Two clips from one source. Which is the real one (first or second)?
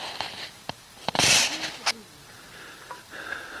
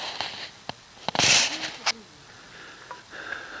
second